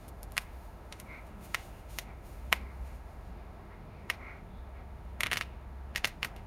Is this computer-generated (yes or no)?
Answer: yes